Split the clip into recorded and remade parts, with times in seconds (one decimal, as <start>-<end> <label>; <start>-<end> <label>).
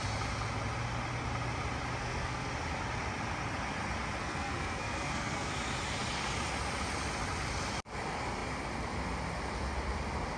0.0-2.0 recorded; 2.0-2.5 remade; 2.5-4.2 recorded; 4.2-5.5 remade; 5.5-10.4 recorded